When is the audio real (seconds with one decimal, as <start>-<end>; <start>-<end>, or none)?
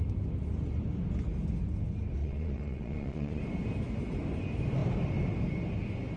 0.0-2.2; 3.4-6.2